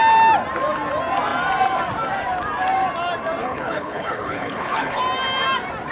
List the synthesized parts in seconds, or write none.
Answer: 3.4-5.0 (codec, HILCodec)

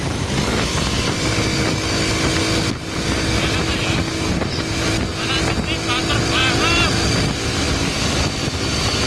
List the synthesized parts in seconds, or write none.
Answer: none